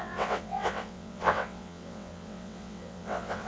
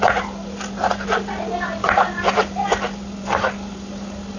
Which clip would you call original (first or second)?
second